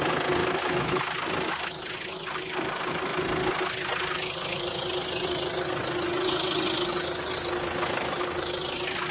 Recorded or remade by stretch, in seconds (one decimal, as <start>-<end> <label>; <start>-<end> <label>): 0.0-0.4 recorded; 0.4-1.0 remade; 1.0-9.1 recorded